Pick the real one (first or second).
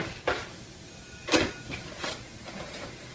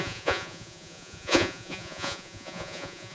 first